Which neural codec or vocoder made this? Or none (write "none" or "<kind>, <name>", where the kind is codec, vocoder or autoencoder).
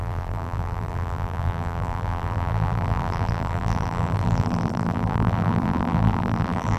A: vocoder, BigVGAN v2